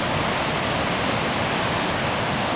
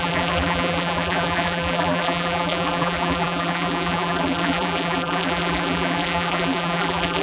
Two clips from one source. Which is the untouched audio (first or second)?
first